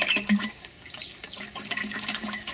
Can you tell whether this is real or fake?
fake